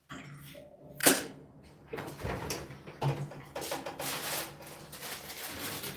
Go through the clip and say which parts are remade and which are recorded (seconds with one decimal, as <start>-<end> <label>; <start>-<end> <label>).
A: 0.0-1.0 recorded; 1.0-2.1 remade; 2.1-6.0 recorded